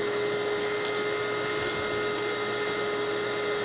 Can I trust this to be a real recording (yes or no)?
yes